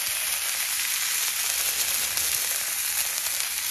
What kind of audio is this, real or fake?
real